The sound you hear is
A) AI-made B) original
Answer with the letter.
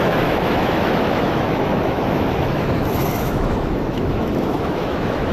A